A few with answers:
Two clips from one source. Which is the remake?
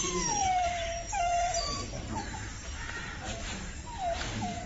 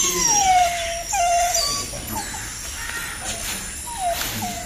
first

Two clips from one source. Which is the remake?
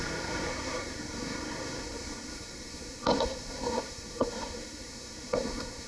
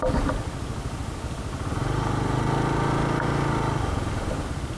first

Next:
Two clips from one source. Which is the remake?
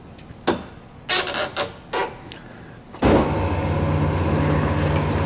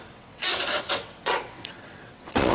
second